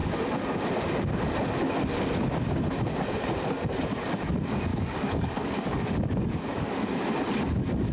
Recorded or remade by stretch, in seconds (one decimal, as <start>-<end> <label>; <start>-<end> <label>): 0.0-4.7 recorded; 4.7-6.9 remade; 6.9-7.9 recorded